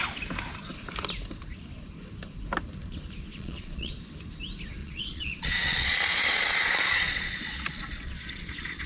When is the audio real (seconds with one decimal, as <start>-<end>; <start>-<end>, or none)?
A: 0.0-3.3; 3.9-4.8